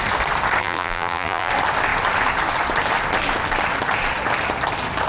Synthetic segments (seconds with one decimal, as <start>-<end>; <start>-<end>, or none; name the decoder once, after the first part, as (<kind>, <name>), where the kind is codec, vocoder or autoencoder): 0.6-1.5 (vocoder, BigVGAN v2)